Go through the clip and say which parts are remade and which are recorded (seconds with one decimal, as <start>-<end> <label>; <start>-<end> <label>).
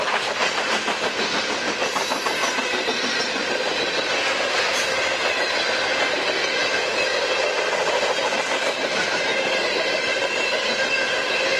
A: 0.0-11.6 recorded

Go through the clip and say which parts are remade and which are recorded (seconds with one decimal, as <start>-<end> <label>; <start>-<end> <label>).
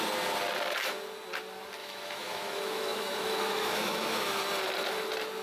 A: 0.0-1.8 recorded; 1.8-4.4 remade; 4.4-5.4 recorded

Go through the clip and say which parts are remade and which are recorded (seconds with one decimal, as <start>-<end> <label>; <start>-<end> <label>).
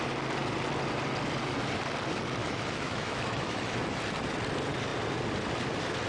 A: 0.0-2.4 recorded; 2.4-4.0 remade; 4.0-6.1 recorded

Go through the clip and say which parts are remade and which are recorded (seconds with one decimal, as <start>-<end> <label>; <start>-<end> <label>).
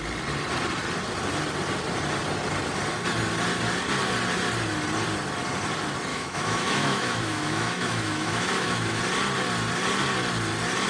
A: 0.0-6.1 recorded; 6.1-9.0 remade; 9.0-10.9 recorded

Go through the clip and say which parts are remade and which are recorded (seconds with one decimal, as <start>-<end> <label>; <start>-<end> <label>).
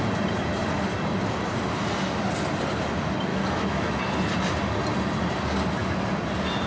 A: 0.0-3.3 recorded; 3.3-4.0 remade; 4.0-6.7 recorded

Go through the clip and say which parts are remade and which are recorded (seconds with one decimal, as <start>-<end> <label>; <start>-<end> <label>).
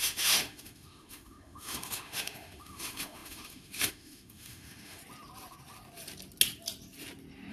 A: 0.0-5.0 remade; 5.0-7.5 recorded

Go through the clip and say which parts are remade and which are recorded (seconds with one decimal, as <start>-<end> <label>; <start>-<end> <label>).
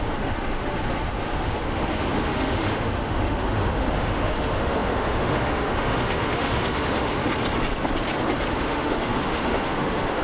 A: 0.0-7.2 remade; 7.2-8.5 recorded; 8.5-10.2 remade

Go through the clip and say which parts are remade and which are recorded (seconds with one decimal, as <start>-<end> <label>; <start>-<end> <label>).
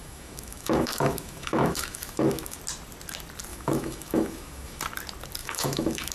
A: 0.0-2.6 remade; 2.6-3.5 recorded; 3.5-4.8 remade; 4.8-5.4 recorded; 5.4-6.1 remade